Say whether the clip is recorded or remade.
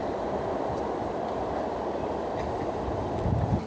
recorded